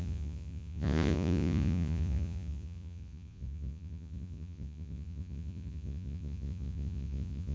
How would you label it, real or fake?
fake